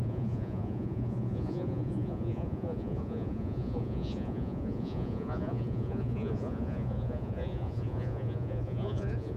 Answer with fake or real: fake